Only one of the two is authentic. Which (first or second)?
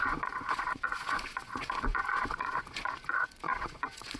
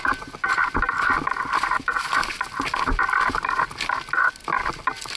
second